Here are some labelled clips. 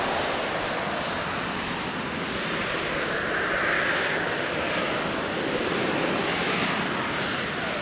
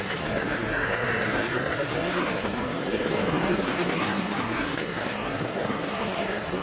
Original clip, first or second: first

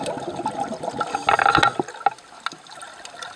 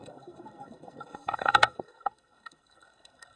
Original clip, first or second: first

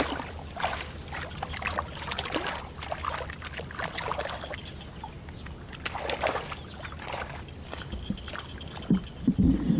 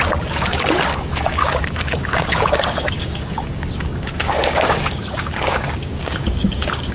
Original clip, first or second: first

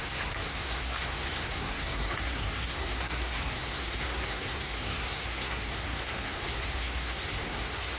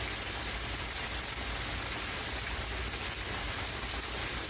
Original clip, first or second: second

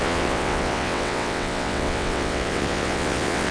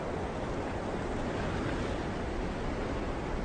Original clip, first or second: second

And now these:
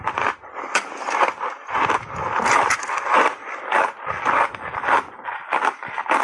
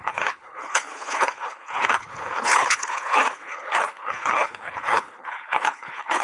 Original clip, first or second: first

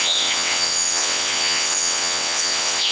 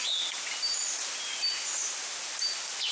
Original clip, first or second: second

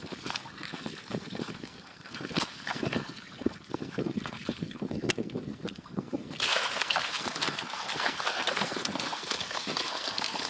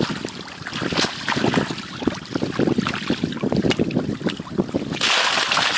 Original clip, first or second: second